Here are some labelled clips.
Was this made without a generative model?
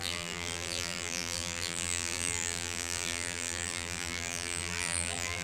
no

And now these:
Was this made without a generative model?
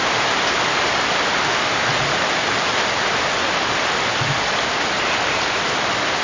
yes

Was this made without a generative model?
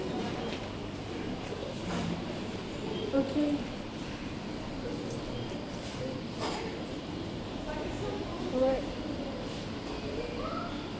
no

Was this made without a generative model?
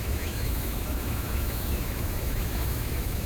no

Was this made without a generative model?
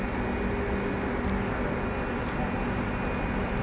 yes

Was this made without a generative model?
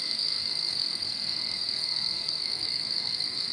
no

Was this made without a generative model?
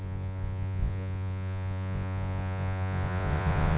no